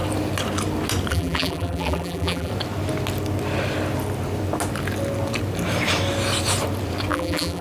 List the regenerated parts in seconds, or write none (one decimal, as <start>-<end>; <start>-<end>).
1.1-2.5; 7.1-7.6